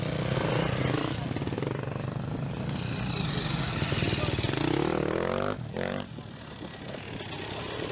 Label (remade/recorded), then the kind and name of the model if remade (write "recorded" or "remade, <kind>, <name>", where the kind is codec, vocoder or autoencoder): recorded